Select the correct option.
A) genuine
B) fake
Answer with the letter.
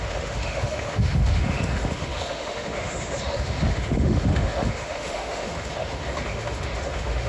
B